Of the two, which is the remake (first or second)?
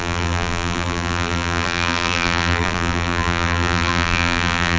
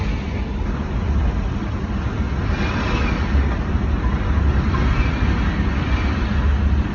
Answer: first